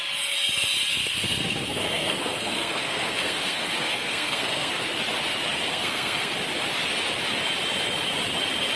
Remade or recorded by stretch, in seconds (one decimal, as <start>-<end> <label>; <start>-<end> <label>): 0.0-1.0 recorded; 1.0-4.7 remade; 4.7-5.7 recorded; 5.7-6.3 remade; 6.3-8.8 recorded